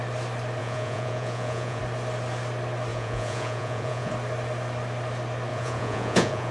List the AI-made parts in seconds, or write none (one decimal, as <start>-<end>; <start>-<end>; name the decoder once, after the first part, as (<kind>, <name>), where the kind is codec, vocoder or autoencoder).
0.6-1.8 (vocoder, Vocos); 2.9-4.1; 5.5-6.5